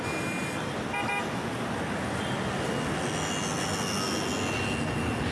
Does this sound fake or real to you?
real